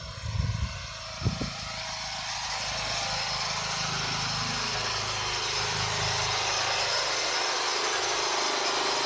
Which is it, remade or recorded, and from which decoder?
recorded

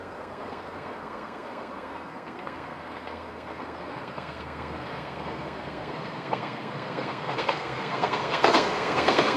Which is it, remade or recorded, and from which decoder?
remade, codec, SNAC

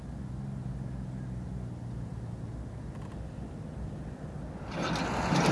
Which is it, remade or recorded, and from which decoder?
recorded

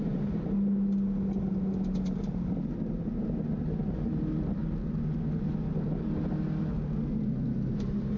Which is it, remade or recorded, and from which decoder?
recorded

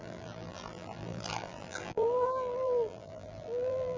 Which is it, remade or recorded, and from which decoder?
remade, vocoder, BigVGAN v2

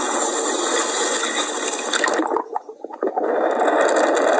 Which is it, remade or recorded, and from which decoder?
recorded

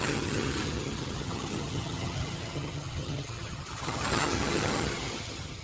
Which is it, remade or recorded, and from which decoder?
remade, vocoder, HiFi-GAN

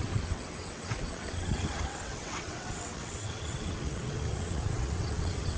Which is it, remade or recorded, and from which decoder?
remade, vocoder, WaveNeXt